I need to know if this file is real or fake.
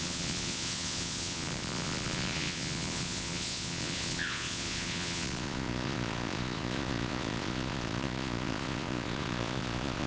fake